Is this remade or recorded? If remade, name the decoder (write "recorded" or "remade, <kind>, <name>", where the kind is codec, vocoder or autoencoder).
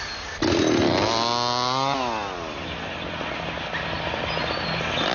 recorded